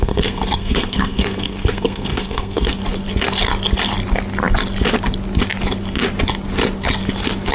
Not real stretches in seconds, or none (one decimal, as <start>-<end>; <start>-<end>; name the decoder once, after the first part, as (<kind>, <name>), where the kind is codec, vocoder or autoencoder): 0.0-2.8 (codec, SNAC)

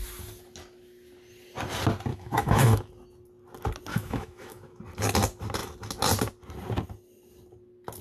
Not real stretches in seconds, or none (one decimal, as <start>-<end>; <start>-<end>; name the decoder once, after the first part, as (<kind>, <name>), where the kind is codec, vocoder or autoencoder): 2.1-2.9 (autoencoder, DAC-VAE); 3.9-4.8

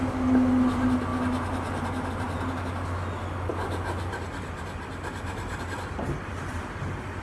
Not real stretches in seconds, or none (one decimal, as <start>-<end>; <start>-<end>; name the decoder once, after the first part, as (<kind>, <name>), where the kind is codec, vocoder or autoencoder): none

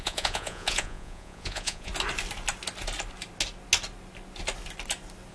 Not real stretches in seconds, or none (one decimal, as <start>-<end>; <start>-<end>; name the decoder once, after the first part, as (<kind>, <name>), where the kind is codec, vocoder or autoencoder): 0.0-1.9 (vocoder, Vocos)